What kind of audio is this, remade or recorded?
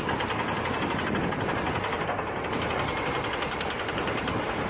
recorded